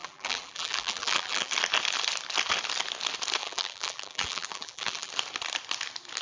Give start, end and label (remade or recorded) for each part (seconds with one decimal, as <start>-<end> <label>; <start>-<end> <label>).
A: 0.0-1.5 remade; 1.5-3.4 recorded; 3.4-5.1 remade; 5.1-6.2 recorded